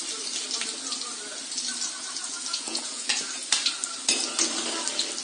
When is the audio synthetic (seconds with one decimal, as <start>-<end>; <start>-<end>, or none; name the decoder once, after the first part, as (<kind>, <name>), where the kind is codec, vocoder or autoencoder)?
2.5-3.1 (vocoder, Vocos)

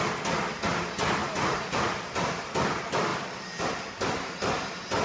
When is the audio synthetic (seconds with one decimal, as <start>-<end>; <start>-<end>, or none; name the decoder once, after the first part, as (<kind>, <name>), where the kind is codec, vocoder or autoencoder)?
1.2-1.9 (vocoder, Vocos)

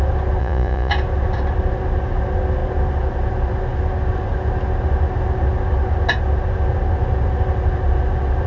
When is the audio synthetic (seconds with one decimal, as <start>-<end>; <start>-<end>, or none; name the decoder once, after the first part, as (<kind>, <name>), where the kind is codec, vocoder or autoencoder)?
0.4-0.9 (vocoder, Vocos)

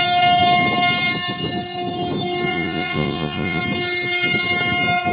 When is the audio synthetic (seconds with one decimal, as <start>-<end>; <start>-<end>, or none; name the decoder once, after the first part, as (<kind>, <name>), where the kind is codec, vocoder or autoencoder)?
2.5-3.6 (vocoder, Vocos)

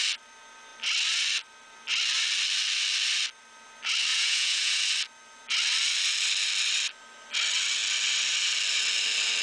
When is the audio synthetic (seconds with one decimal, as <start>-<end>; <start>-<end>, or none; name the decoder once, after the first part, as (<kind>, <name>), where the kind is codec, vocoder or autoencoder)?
4.1-4.8 (vocoder, Vocos)

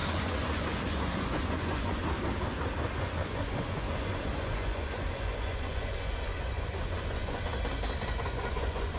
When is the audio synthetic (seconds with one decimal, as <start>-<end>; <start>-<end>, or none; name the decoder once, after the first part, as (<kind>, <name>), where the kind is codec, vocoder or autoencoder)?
0.0-2.0 (vocoder, Vocos); 3.0-7.5; 8.1-9.0

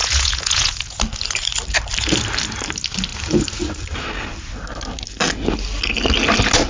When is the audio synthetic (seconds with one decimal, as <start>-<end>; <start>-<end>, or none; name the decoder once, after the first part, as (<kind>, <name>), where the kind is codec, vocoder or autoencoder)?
0.0-1.0 (vocoder, Vocos)